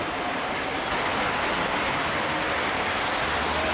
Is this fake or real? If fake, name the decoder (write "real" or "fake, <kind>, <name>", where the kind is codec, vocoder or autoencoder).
real